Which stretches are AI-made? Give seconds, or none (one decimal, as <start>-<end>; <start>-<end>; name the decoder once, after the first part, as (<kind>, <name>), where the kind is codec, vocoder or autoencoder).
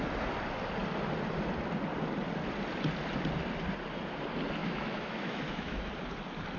4.6-5.9 (autoencoder, DAC-VAE)